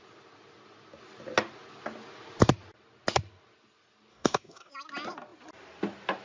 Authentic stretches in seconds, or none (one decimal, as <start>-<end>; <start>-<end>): 0.0-4.1; 4.7-6.2

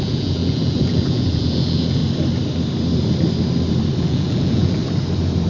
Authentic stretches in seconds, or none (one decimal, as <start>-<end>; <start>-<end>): 2.0-4.0; 4.8-5.5

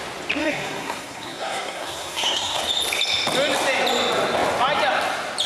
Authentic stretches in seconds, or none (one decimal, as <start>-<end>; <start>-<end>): 0.0-0.4; 2.6-5.5